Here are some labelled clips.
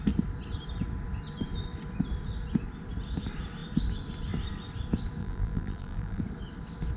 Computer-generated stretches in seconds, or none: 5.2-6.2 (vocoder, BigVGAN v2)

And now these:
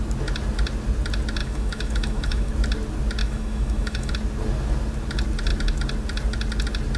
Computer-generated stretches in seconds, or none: 1.4-2.5 (autoencoder, DAC-VAE); 3.2-4.1